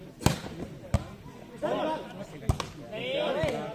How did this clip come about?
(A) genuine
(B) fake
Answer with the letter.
A